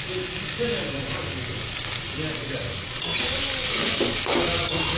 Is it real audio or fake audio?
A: real